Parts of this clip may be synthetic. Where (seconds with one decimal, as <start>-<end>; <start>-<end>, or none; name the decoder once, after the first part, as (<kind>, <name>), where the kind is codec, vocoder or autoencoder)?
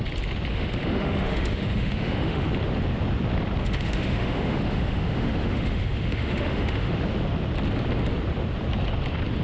0.5-2.5 (autoencoder, DAC-VAE); 3.6-6.9